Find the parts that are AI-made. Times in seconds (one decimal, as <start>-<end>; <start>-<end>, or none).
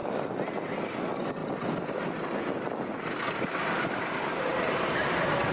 none